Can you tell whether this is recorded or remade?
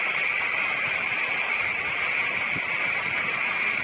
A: recorded